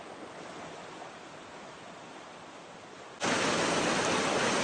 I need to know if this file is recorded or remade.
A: recorded